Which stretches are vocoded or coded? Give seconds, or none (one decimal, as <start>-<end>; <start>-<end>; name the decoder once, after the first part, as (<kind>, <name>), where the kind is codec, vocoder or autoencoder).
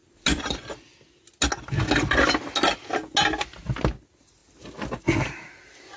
none